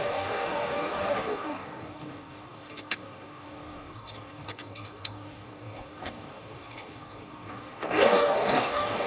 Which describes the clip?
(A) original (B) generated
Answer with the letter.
B